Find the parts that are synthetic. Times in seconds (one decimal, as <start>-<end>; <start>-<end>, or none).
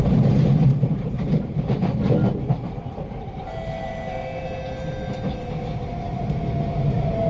0.7-2.0